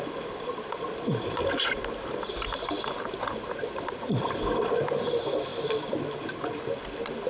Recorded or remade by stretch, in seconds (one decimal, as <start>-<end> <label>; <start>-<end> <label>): 0.0-7.3 recorded